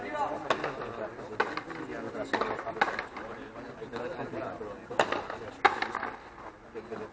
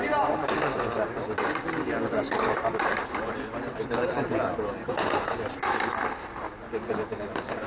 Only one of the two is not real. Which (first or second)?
second